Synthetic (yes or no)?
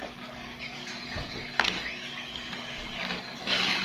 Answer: yes